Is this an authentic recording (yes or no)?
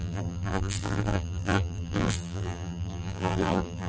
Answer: no